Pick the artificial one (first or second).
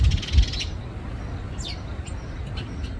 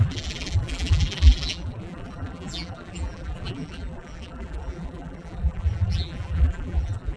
second